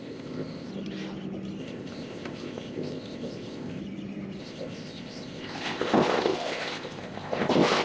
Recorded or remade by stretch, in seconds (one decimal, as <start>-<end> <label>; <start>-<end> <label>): 0.0-0.7 remade; 0.7-1.6 recorded; 1.6-3.8 remade; 3.8-4.4 recorded; 4.4-7.8 remade